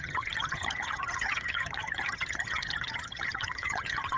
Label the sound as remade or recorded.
remade